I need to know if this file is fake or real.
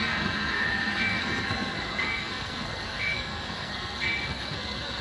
fake